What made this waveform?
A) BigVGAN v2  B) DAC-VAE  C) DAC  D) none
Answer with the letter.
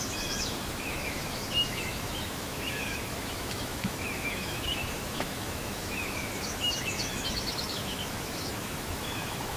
B